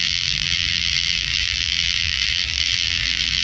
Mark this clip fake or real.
fake